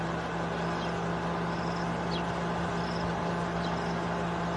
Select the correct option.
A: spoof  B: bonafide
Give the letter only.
B